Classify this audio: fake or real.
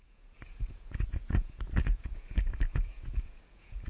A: fake